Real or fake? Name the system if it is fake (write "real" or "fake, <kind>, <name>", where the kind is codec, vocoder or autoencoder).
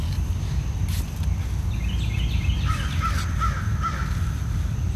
real